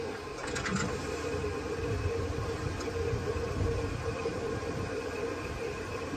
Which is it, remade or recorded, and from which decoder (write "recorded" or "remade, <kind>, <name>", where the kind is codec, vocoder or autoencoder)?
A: recorded